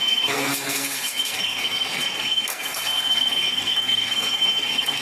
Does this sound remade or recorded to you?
remade